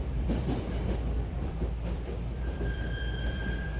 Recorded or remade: remade